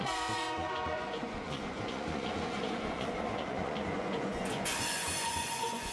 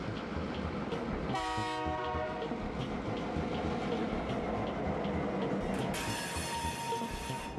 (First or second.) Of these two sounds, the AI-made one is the first